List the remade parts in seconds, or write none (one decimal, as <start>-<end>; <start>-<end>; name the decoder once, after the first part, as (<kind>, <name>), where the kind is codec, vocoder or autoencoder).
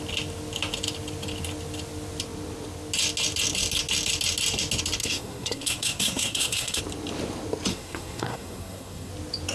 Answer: 5.0-6.8 (codec, SNAC); 7.7-9.1